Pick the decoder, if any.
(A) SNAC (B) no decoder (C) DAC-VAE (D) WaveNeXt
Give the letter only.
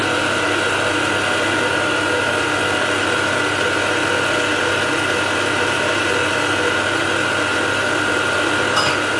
B